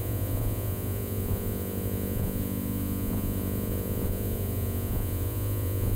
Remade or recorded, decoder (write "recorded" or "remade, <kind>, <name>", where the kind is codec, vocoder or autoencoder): remade, vocoder, Vocos